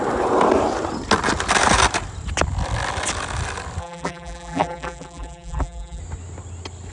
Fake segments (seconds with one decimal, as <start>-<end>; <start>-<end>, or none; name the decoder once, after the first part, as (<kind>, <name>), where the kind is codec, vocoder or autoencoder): 3.8-6.0 (vocoder, BigVGAN v2)